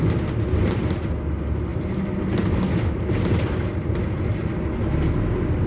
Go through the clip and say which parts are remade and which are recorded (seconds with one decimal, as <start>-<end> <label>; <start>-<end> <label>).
0.0-5.7 recorded